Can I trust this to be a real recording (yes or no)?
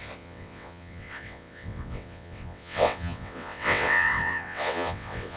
no